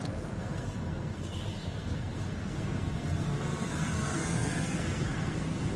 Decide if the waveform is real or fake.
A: fake